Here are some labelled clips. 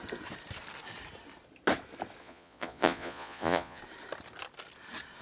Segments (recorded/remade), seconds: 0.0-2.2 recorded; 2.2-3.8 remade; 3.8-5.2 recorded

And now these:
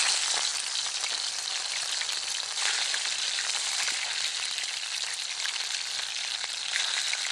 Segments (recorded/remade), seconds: 0.0-7.3 recorded

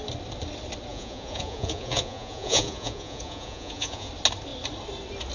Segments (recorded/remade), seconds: 0.0-0.9 recorded; 0.9-4.1 remade; 4.1-5.3 recorded

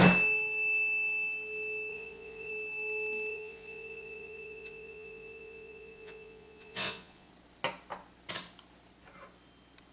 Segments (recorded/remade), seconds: 0.0-1.9 recorded; 1.9-2.5 remade; 2.5-3.3 recorded; 3.3-7.3 remade; 7.3-9.9 recorded

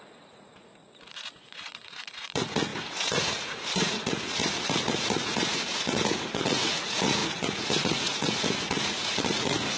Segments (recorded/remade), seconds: 0.0-9.8 remade

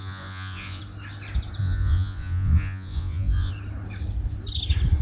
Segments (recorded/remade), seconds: 0.0-0.8 remade; 0.8-1.6 recorded; 1.6-3.5 remade; 3.5-5.0 recorded

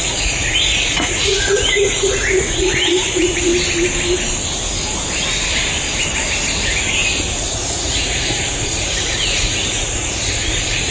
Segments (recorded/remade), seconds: 0.0-3.5 remade; 3.5-7.4 recorded; 7.4-10.9 remade

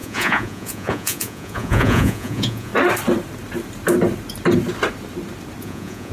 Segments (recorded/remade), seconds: 0.0-2.7 remade; 2.7-5.6 recorded; 5.6-6.1 remade